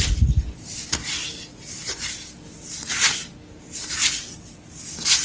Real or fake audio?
real